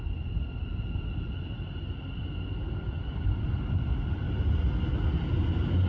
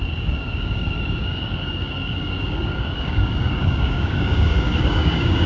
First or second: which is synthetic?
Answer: second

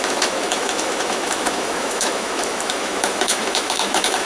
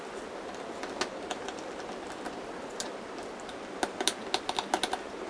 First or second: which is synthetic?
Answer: first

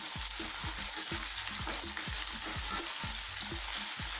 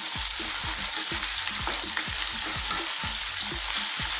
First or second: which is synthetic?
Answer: second